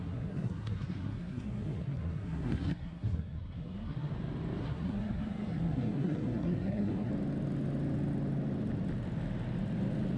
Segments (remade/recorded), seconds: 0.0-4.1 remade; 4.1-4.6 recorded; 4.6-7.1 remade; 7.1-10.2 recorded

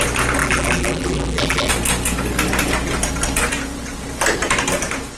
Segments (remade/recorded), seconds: 0.0-0.4 recorded; 0.4-1.7 remade; 1.7-5.2 recorded